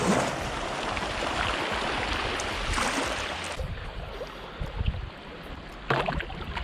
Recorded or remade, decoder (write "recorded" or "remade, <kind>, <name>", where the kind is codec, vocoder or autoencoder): recorded